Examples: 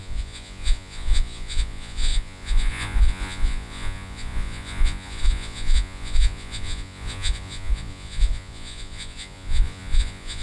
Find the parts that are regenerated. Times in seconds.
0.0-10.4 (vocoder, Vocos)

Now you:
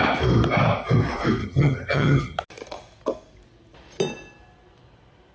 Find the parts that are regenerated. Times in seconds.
1.4-2.4 (vocoder, HiFi-GAN)

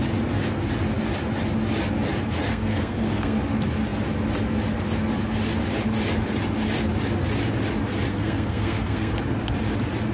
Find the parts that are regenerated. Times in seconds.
2.5-3.4 (codec, SNAC); 8.1-9.1

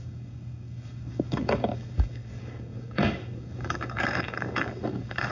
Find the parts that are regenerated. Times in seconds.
0.0-5.3 (codec, DAC)

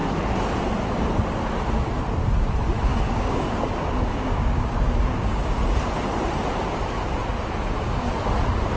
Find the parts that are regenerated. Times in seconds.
2.9-5.5 (codec, DAC)

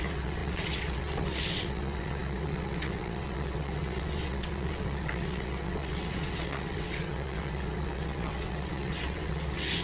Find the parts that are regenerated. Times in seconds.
0.0-9.8 (vocoder, WaveNeXt)

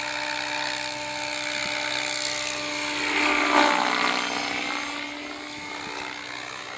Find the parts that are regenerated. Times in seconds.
none